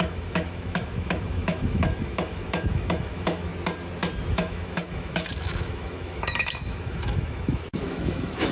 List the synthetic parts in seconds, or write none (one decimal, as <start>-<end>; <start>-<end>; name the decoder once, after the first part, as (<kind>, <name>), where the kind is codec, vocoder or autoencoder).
0.0-3.5 (autoencoder, DAC-VAE); 4.3-8.5